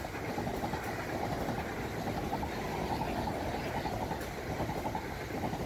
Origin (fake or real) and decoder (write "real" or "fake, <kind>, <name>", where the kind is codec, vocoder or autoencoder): real